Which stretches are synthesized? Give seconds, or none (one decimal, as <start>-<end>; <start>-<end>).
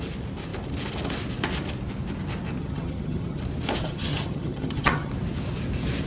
2.6-3.4; 3.8-5.1